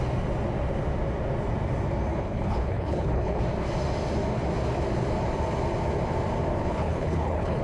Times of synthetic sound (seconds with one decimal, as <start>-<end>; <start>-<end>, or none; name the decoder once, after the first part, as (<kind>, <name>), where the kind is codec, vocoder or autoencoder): 2.1-3.4 (codec, HILCodec); 6.6-7.6